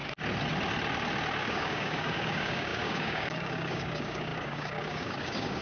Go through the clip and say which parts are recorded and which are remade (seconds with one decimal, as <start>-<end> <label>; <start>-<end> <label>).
0.0-1.4 recorded; 1.4-5.6 remade